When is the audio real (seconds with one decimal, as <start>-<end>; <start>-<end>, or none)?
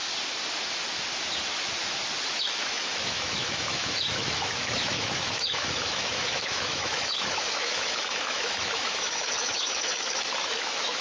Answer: 0.0-2.4